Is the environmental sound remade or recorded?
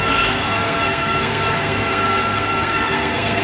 remade